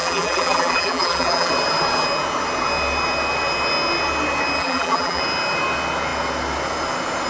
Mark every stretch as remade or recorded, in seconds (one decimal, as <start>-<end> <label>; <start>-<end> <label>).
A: 0.0-1.5 remade; 1.5-4.6 recorded; 4.6-5.2 remade; 5.2-7.3 recorded